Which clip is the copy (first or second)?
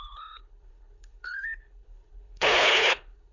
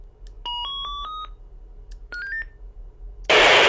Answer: first